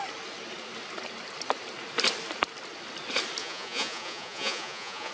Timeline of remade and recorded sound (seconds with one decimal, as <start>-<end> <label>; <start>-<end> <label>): 0.0-3.4 recorded; 3.4-5.1 remade